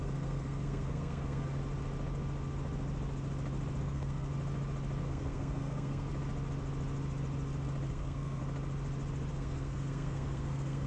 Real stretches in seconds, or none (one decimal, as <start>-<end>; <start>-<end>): 1.6-3.8; 4.3-5.0; 6.1-7.9; 8.4-9.3